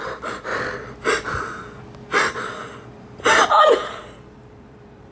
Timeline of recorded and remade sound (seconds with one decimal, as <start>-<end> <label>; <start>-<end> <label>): 0.0-0.5 remade; 0.5-3.6 recorded; 3.6-5.1 remade